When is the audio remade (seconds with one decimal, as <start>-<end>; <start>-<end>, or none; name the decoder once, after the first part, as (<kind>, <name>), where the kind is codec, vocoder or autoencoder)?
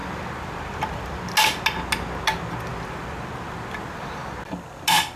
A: 0.0-1.2 (vocoder, BigVGAN v2); 2.7-4.2